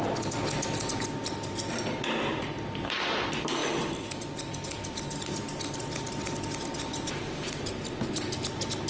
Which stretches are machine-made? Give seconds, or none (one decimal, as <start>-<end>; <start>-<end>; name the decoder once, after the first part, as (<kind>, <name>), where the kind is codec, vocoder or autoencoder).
3.6-5.0 (vocoder, BigVGAN v2); 6.9-7.7